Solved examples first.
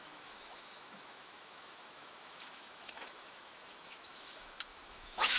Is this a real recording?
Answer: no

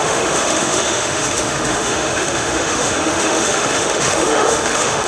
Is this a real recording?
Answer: no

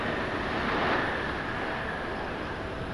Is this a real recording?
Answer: yes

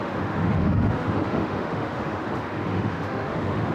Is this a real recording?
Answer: no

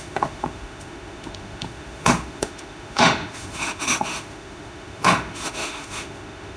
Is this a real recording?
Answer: no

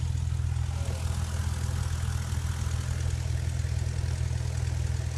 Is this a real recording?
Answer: yes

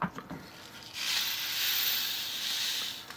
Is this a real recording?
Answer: yes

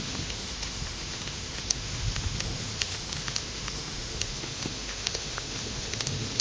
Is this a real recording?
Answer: no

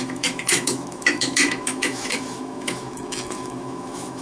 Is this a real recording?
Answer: no